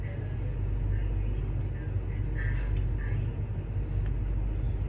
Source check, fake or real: real